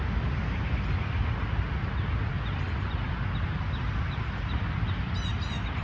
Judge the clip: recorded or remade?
recorded